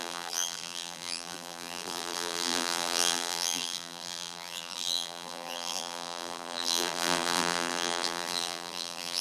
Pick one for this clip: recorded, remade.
remade